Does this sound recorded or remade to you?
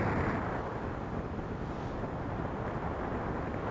recorded